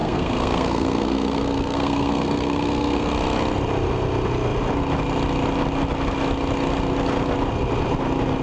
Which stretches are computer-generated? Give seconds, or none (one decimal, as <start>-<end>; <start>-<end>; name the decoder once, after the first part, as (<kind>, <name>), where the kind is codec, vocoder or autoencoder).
0.0-3.1 (codec, SNAC)